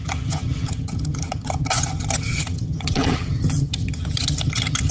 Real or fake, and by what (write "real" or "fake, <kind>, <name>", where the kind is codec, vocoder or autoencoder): fake, vocoder, HiFi-GAN